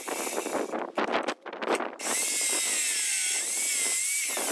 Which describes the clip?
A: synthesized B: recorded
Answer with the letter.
B